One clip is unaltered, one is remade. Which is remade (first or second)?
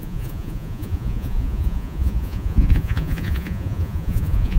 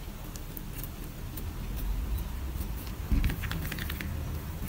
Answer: first